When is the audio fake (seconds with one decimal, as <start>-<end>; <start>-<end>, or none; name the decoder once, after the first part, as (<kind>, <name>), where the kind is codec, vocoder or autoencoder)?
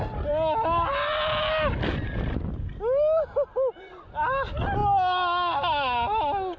none